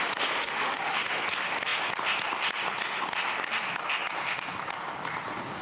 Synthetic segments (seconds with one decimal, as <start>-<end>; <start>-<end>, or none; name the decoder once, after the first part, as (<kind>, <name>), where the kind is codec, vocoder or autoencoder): 0.4-1.2 (autoencoder, DAC-VAE)